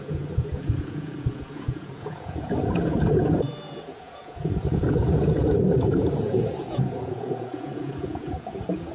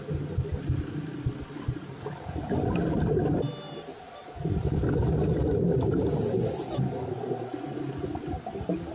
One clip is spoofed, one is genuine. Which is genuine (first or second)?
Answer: second